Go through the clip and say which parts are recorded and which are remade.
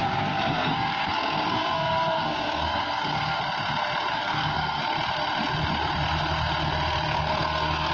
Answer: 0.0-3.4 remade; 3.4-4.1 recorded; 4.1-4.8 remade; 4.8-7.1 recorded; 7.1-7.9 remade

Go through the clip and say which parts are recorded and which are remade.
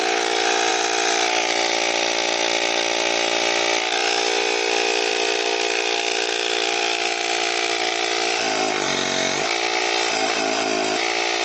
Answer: 0.0-0.7 recorded; 0.7-4.0 remade; 4.0-5.1 recorded; 5.1-11.4 remade